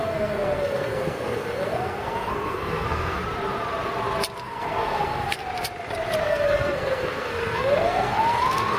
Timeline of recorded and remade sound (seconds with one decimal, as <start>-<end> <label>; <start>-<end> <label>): 0.0-3.2 remade; 3.2-4.4 recorded; 4.4-5.4 remade; 5.4-6.2 recorded; 6.2-8.8 remade